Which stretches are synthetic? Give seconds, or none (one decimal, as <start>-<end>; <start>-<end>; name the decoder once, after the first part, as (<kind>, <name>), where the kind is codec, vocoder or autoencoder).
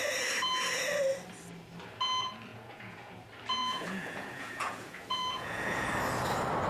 2.5-3.1 (vocoder, Vocos); 3.6-5.9